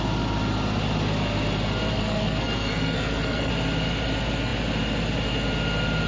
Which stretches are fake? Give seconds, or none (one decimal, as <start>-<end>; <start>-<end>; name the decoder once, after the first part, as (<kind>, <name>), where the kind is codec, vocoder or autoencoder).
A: 2.0-3.5 (codec, SNAC)